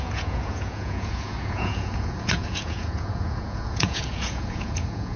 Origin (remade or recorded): remade